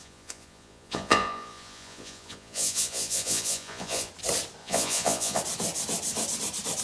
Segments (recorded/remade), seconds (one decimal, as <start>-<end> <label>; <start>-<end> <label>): 0.0-4.1 remade; 4.1-4.6 recorded; 4.6-5.4 remade; 5.4-6.8 recorded